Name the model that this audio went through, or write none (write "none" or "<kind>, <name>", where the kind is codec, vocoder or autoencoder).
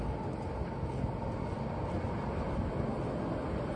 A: none